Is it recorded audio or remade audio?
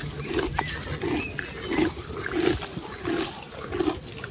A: recorded